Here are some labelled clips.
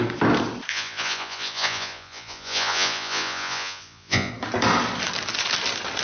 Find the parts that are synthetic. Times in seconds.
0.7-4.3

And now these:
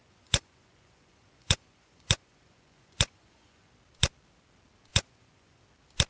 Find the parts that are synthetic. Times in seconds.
0.0-3.7; 4.9-5.6

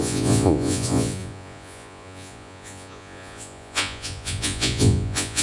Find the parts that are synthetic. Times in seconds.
0.0-5.4